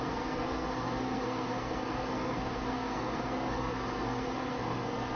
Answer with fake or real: fake